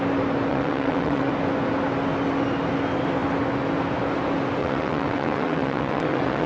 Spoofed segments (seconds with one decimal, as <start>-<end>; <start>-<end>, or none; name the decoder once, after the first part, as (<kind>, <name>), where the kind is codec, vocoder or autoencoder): 0.5-1.3 (vocoder, WaveNeXt); 4.6-6.5